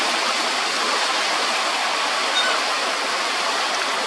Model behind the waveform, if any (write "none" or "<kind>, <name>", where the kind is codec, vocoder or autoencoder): none